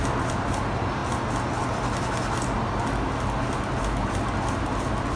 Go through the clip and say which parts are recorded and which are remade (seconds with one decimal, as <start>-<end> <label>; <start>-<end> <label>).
0.0-5.2 recorded